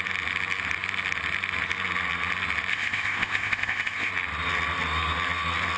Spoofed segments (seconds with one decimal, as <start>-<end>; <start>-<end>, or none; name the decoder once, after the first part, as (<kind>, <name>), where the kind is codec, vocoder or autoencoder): 2.7-4.1 (codec, ZipCodec)